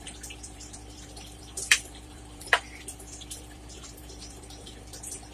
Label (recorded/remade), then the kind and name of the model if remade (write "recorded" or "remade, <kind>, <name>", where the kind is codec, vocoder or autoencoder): remade, vocoder, BigVGAN v2